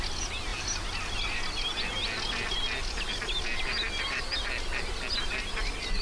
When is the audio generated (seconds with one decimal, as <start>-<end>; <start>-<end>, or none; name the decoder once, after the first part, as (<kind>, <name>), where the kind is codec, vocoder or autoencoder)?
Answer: none